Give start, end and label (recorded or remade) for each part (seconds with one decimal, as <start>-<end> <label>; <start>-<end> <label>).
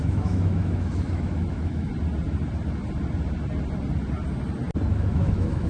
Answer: 0.0-1.9 remade; 1.9-4.9 recorded; 4.9-5.7 remade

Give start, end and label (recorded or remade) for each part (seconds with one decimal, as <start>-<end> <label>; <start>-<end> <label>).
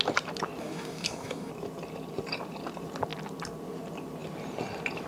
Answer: 0.0-0.6 recorded; 0.6-1.5 remade; 1.5-5.1 recorded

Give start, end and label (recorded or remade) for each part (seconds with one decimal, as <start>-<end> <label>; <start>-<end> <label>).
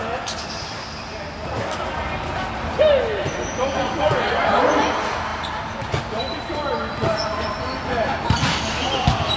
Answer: 0.0-9.4 recorded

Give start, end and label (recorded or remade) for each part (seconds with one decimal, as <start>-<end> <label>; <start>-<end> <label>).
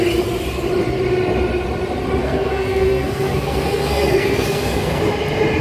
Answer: 0.0-2.2 recorded; 2.2-5.0 remade; 5.0-5.6 recorded